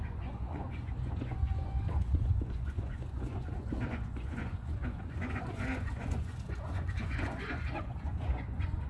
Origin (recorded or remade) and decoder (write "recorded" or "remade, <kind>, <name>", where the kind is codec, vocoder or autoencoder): remade, vocoder, Vocos